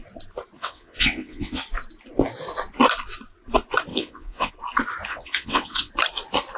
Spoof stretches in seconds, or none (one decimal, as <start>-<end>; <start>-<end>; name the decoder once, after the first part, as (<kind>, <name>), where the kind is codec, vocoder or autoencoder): 0.6-1.6 (vocoder, WaveNeXt); 3.9-4.5; 5.1-5.9